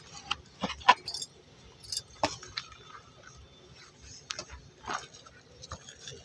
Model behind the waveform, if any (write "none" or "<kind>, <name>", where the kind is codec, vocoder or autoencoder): none